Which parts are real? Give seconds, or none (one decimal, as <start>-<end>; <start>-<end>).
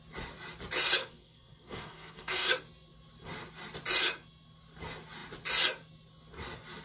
0.0-1.0; 2.5-6.8